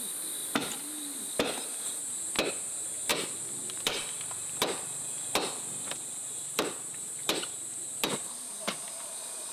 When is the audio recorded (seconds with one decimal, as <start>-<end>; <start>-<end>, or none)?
0.0-3.1; 7.5-9.5